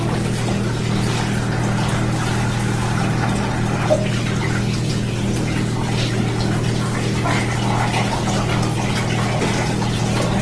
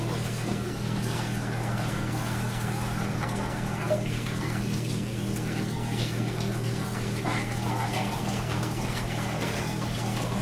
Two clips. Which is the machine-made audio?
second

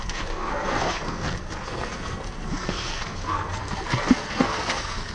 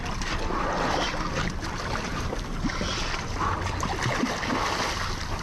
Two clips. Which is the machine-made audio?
first